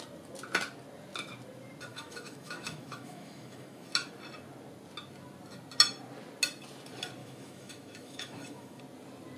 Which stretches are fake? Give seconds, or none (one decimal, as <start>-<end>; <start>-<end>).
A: 1.9-3.9; 7.2-8.8